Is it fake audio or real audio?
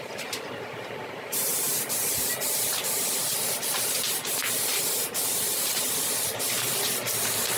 fake